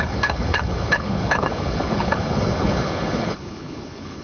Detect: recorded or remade remade